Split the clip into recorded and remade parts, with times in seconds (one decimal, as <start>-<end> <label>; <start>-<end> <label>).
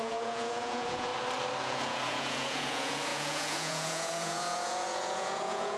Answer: 0.0-1.1 remade; 1.1-1.6 recorded; 1.6-5.8 remade